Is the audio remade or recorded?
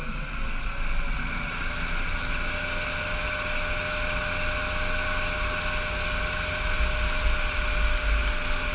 recorded